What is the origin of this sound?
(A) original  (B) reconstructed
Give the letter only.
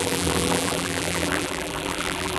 B